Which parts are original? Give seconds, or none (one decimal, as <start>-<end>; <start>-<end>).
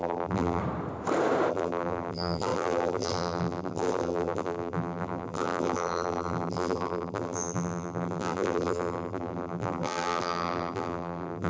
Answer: 0.6-1.5